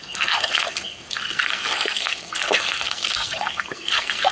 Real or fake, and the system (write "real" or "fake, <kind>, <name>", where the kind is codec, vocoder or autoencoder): fake, codec, SNAC